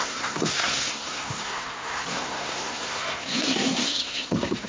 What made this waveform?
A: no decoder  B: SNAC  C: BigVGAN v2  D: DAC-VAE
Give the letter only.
B